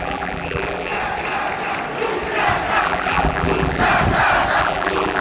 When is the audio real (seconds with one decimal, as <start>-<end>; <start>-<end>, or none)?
0.9-2.8; 3.8-4.6